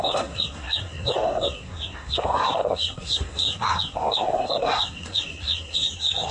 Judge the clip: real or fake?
fake